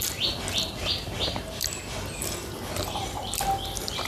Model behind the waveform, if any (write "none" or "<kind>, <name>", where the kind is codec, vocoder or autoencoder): none